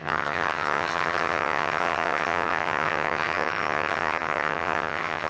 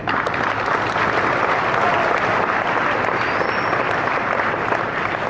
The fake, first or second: first